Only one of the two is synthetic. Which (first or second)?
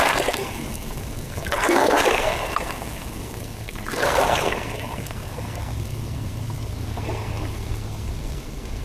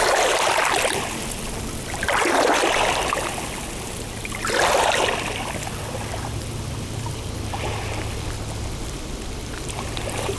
first